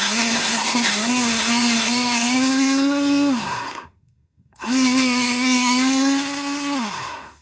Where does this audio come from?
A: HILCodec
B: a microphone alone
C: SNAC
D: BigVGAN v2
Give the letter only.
C